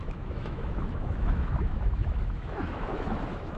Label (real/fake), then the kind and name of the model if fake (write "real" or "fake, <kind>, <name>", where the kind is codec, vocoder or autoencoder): fake, autoencoder, DAC-VAE